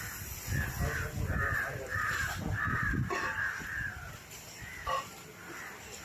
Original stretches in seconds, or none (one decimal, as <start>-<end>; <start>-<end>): 0.0-1.4; 5.0-6.0